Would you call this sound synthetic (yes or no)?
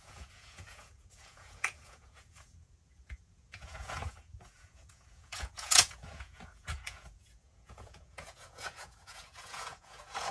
yes